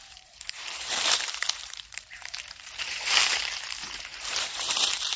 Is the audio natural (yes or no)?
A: no